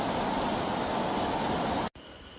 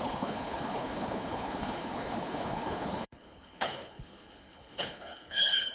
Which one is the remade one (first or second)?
second